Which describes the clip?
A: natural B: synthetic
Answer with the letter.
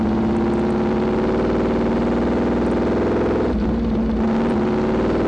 A